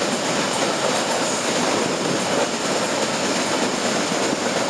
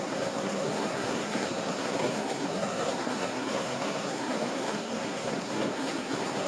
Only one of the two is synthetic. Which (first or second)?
second